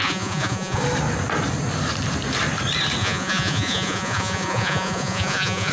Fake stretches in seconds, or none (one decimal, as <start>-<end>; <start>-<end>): 0.0-0.8; 3.0-5.7